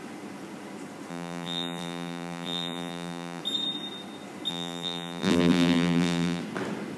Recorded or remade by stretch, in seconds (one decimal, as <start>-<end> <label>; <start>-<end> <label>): 0.0-1.1 recorded; 1.1-3.4 remade; 3.4-4.5 recorded; 4.5-6.4 remade; 6.4-7.0 recorded